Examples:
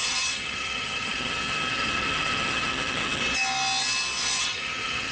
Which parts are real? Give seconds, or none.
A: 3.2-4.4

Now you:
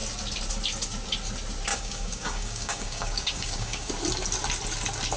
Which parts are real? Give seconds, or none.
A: 0.0-1.7; 3.9-5.2